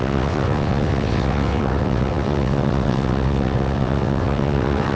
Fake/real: fake